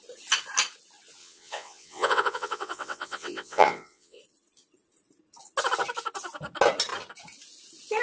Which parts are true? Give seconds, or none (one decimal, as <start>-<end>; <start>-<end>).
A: 0.0-1.2; 4.2-8.0